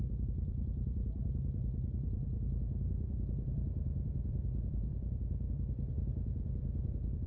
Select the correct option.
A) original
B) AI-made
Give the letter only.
B